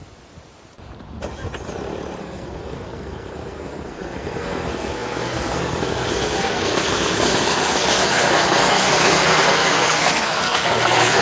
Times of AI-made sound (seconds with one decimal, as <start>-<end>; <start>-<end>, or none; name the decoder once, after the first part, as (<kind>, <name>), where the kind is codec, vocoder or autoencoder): 2.2-11.2 (codec, SNAC)